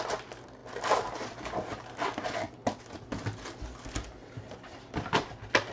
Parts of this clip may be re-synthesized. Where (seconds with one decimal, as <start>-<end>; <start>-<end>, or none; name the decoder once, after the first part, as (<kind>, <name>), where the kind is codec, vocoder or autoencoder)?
none